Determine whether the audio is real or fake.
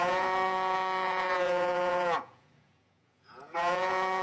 fake